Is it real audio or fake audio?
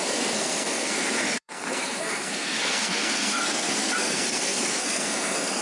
fake